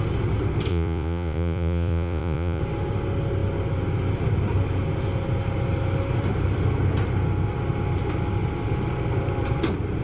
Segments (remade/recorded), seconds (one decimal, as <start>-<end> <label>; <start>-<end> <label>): 0.0-0.7 recorded; 0.7-2.6 remade; 2.6-10.0 recorded